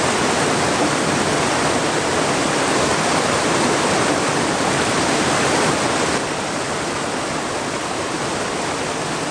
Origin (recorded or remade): recorded